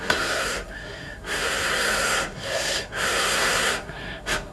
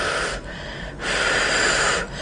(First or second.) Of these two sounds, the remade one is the first